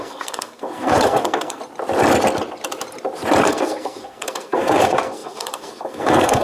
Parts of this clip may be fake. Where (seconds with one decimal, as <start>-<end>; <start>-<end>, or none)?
0.0-1.6; 3.4-6.4

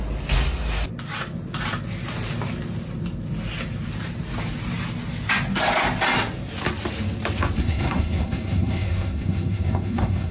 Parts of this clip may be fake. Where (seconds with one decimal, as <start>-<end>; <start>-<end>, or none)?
7.6-10.3

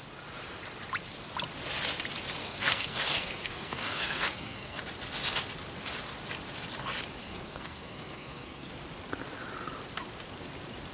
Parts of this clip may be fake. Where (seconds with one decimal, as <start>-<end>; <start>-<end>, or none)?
2.4-4.8; 7.2-8.7

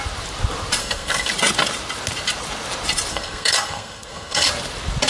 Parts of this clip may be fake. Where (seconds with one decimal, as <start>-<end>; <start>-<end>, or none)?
0.8-1.3; 3.1-4.5

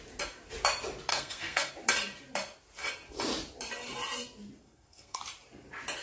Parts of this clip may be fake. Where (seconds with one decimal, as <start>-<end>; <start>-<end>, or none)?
1.1-1.7; 4.6-5.2

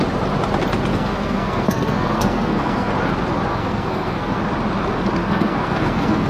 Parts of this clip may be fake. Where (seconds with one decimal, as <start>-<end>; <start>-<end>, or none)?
0.9-2.9; 3.5-4.4; 5.2-6.3

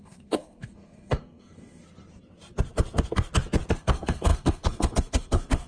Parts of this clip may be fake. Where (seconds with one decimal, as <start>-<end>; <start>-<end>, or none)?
0.0-1.8; 3.7-5.7

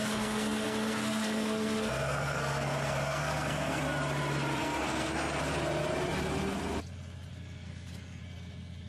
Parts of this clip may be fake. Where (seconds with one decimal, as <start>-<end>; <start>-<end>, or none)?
0.0-3.8; 4.6-5.4; 7.3-8.2